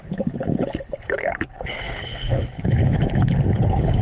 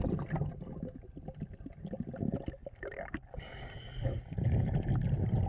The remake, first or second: first